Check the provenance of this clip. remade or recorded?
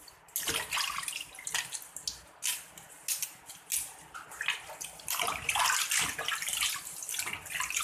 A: recorded